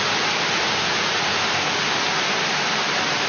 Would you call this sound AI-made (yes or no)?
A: no